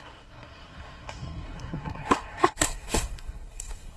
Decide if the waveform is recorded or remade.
remade